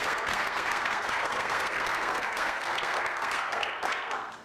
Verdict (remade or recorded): remade